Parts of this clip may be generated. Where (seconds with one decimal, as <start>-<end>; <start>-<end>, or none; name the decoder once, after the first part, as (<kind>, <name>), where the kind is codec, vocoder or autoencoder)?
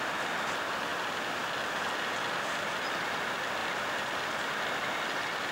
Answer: none